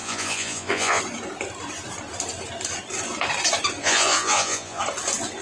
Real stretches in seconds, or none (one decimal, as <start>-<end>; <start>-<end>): 1.0-3.8; 4.8-5.4